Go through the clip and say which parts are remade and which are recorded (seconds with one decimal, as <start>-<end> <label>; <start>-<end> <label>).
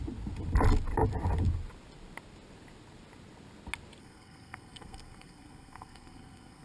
0.0-4.0 recorded; 4.0-6.6 remade